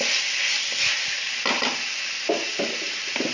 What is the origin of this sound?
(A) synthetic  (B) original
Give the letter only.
B